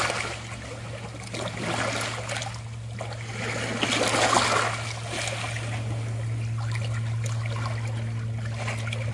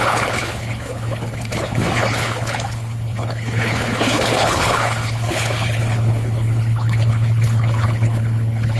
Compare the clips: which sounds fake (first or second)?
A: second